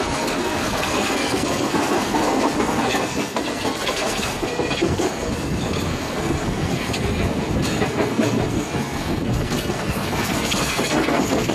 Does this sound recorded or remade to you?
remade